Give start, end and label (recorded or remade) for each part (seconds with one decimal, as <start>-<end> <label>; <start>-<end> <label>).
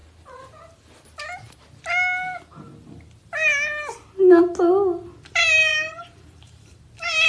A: 0.0-5.7 recorded; 5.7-6.8 remade; 6.8-7.3 recorded